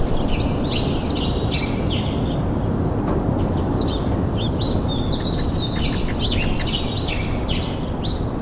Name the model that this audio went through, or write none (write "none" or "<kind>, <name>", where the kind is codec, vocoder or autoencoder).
none